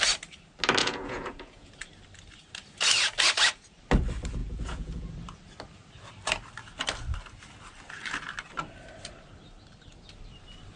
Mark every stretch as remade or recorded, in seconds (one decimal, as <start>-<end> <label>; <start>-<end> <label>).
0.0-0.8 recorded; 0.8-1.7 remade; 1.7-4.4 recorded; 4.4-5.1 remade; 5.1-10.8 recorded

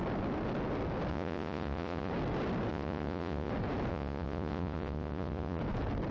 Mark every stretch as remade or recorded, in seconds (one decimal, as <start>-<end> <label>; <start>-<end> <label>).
0.0-1.1 recorded; 1.1-2.1 remade; 2.1-2.7 recorded; 2.7-3.5 remade; 3.5-3.9 recorded; 3.9-5.6 remade; 5.6-6.1 recorded

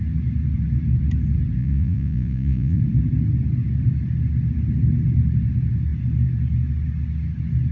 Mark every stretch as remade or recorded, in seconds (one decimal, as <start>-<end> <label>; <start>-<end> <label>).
0.0-1.6 recorded; 1.6-2.8 remade; 2.8-7.7 recorded

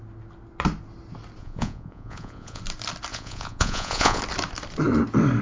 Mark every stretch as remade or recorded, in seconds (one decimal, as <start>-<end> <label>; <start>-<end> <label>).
0.0-1.4 recorded; 1.4-2.6 remade; 2.6-3.1 recorded; 3.1-4.2 remade; 4.2-5.4 recorded

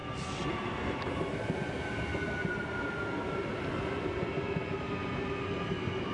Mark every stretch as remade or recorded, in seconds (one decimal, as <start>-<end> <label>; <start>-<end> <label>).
0.0-6.1 recorded